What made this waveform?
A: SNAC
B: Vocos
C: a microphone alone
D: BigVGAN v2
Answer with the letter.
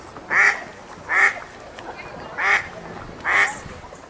C